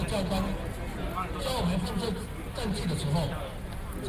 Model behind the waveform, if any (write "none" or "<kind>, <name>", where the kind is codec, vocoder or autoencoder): none